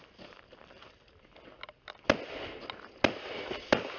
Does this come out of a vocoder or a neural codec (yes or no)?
no